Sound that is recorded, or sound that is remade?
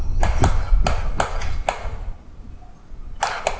recorded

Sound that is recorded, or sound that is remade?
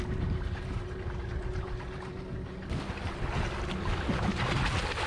recorded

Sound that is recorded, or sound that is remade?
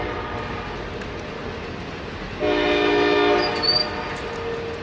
recorded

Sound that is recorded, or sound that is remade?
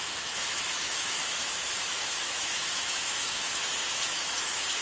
remade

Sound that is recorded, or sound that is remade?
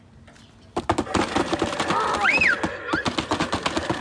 recorded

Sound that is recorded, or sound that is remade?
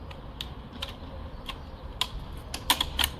recorded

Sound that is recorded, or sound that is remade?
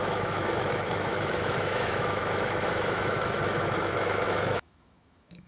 remade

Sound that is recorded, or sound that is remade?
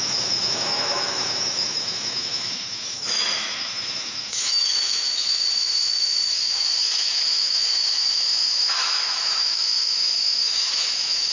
remade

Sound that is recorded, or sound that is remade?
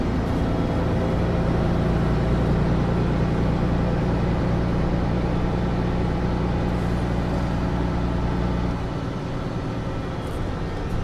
recorded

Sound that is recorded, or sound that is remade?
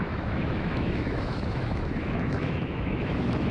remade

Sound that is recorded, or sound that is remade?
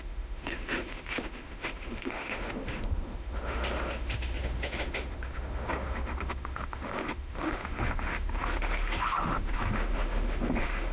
remade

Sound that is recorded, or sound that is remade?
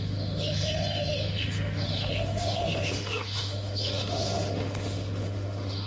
remade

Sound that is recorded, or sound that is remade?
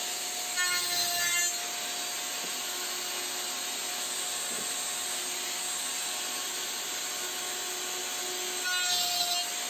recorded